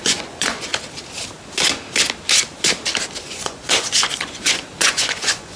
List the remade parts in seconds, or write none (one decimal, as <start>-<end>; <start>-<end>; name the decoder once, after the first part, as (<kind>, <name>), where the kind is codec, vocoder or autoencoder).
0.0-0.7 (vocoder, Vocos); 3.2-5.6